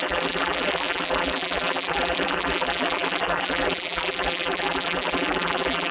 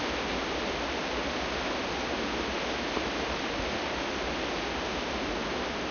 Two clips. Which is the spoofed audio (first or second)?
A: first